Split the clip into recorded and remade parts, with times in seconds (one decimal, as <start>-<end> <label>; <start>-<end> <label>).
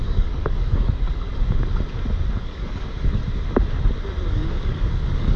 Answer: 0.0-1.3 remade; 1.3-2.4 recorded; 2.4-3.2 remade; 3.2-4.3 recorded; 4.3-5.4 remade